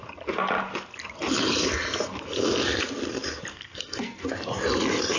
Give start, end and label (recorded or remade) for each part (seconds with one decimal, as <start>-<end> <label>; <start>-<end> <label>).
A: 0.0-3.5 recorded; 3.5-4.3 remade; 4.3-5.2 recorded